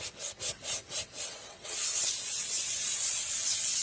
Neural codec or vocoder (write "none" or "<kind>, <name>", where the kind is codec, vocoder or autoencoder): vocoder, WaveNeXt